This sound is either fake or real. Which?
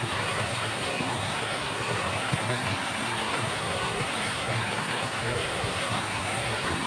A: fake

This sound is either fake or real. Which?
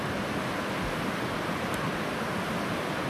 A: real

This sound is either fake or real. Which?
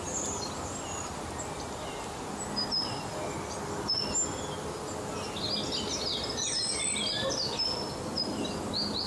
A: real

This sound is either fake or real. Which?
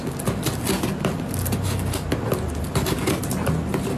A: real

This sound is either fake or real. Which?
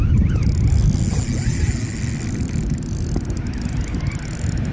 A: real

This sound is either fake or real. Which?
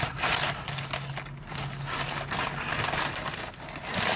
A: real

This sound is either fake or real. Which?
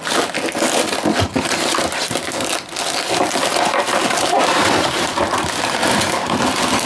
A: real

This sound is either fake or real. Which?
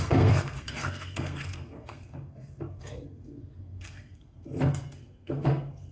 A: fake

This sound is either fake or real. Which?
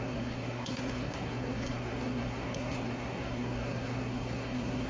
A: fake